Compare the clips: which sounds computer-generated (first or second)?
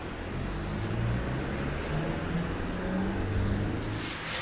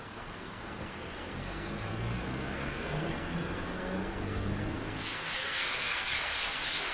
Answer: second